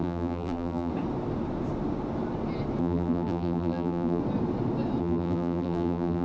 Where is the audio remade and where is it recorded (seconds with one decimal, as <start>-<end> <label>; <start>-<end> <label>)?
0.0-0.9 remade; 0.9-2.8 recorded; 2.8-4.2 remade; 4.2-5.0 recorded; 5.0-6.2 remade